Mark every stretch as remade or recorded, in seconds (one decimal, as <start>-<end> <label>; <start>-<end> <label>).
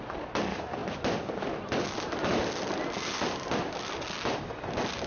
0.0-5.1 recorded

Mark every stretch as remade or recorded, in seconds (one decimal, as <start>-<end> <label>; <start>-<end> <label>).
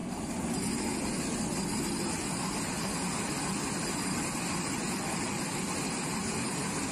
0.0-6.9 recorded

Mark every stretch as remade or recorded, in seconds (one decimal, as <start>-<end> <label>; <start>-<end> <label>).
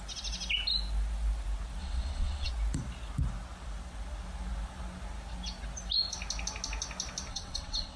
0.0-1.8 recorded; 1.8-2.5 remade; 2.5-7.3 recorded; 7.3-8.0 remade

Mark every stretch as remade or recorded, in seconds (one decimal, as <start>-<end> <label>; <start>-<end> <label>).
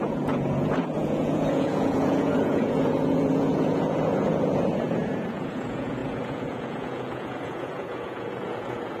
0.0-9.0 remade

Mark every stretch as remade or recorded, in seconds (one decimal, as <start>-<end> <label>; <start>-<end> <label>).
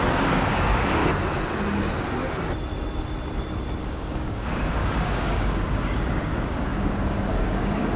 0.0-1.0 remade; 1.0-3.8 recorded; 3.8-8.0 remade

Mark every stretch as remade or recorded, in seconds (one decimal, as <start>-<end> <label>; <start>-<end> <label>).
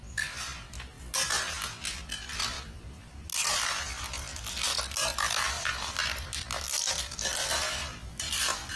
0.0-8.8 recorded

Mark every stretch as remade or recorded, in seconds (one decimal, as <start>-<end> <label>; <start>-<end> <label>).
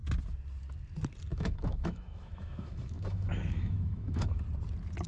0.0-1.3 recorded; 1.3-4.4 remade; 4.4-5.1 recorded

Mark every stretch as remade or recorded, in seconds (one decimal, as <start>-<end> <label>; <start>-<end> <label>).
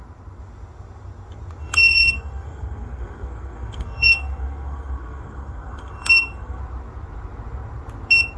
0.0-1.6 recorded; 1.6-6.6 remade; 6.6-8.4 recorded